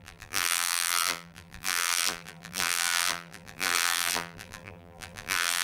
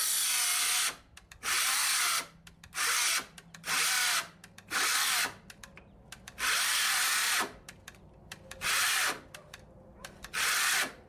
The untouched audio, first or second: second